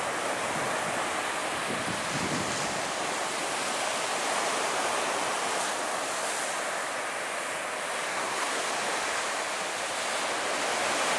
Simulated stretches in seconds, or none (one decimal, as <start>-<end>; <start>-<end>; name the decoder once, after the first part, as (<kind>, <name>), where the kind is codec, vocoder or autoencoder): 8.1-8.6 (codec, SNAC)